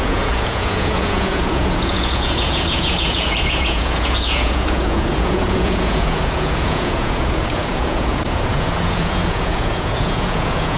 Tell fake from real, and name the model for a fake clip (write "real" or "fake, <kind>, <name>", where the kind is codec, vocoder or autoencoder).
fake, vocoder, Vocos